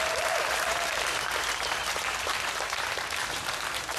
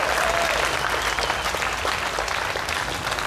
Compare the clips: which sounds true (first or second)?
second